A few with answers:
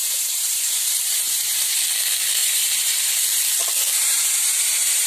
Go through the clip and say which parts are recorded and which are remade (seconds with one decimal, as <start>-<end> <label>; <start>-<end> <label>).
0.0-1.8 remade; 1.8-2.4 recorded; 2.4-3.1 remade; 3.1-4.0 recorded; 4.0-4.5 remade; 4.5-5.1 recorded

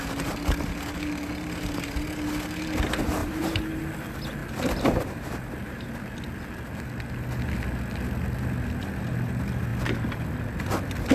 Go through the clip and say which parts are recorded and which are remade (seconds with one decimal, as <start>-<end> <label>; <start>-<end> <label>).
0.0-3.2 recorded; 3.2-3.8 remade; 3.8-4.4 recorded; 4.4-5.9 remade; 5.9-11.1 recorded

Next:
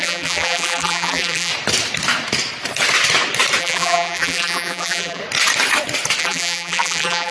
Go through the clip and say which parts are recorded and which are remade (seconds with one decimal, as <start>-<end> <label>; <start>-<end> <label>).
0.0-1.5 remade; 1.5-3.6 recorded; 3.6-5.2 remade; 5.2-6.2 recorded; 6.2-7.3 remade

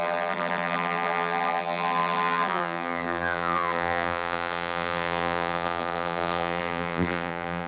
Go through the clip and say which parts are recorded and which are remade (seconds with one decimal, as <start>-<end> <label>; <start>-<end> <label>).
0.0-7.7 remade

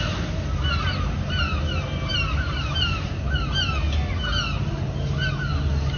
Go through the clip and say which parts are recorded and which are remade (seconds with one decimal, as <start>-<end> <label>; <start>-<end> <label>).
0.0-2.1 recorded; 2.1-3.1 remade; 3.1-6.0 recorded

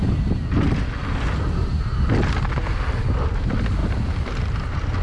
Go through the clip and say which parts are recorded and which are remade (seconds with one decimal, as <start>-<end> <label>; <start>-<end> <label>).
0.0-5.0 recorded

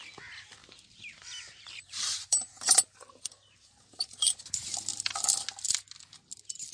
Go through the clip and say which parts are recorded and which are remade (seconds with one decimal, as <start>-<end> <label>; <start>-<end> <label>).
0.0-0.6 recorded; 0.6-4.6 remade; 4.6-6.7 recorded

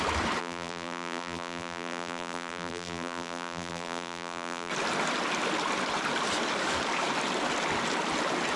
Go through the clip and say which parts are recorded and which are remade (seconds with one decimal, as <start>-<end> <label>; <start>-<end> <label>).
0.0-0.4 recorded; 0.4-4.7 remade; 4.7-8.6 recorded